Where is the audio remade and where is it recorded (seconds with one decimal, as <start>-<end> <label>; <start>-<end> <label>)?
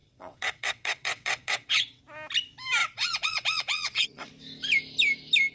0.0-2.0 remade; 2.0-2.8 recorded; 2.8-4.3 remade; 4.3-5.5 recorded